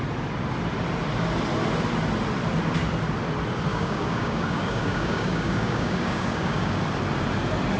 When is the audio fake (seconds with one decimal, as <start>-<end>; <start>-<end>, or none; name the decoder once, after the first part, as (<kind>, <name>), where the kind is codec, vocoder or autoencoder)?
3.7-6.8 (codec, DAC)